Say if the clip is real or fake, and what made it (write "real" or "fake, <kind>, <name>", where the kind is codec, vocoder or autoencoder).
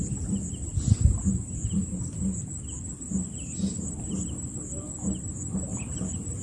real